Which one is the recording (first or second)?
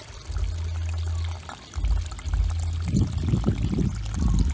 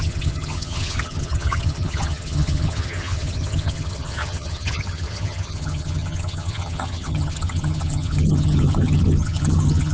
first